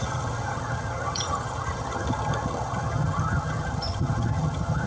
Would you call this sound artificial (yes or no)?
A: yes